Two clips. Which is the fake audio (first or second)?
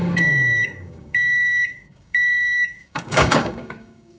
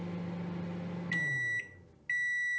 first